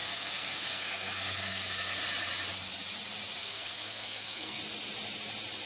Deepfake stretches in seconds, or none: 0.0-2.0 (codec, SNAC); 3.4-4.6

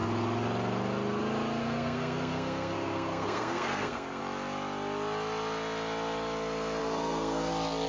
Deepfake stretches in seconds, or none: 1.6-4.2 (codec, SNAC); 6.8-7.5